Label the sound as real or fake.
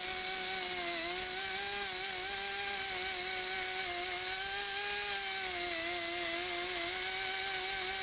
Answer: real